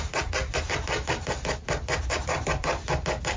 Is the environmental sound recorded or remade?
recorded